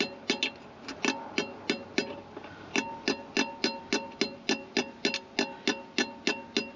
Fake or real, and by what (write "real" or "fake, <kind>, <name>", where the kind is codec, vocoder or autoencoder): real